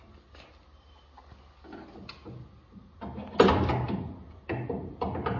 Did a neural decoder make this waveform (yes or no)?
no